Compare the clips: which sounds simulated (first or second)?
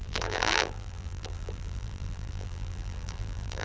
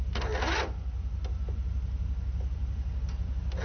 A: first